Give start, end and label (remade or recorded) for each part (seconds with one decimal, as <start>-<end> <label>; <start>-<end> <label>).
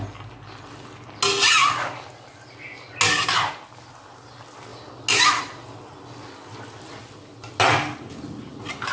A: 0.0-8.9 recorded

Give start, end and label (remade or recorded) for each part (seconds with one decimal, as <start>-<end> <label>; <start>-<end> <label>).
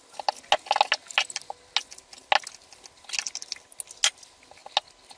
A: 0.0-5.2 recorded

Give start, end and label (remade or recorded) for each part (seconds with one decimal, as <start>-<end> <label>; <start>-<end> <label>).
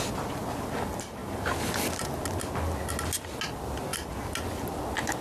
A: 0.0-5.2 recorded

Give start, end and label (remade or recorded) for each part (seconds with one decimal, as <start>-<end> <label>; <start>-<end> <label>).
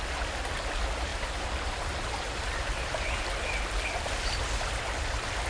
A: 0.0-1.1 recorded; 1.1-4.4 remade; 4.4-5.5 recorded